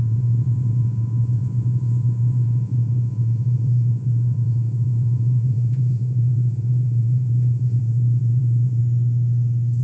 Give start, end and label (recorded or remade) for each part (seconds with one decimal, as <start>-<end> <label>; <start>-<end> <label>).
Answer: 0.0-8.8 remade; 8.8-9.8 recorded